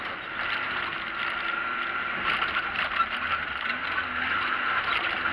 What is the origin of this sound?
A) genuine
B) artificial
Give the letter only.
A